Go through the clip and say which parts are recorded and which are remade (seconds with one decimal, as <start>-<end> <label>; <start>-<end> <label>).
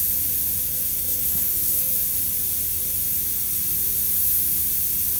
0.0-0.7 recorded; 0.7-1.9 remade; 1.9-5.2 recorded